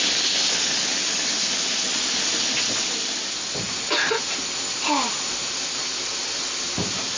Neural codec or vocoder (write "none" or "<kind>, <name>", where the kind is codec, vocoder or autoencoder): none